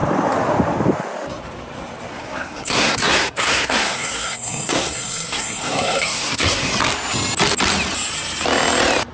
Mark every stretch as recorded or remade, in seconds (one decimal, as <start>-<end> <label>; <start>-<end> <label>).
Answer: 0.0-2.1 recorded; 2.1-6.7 remade; 6.7-9.1 recorded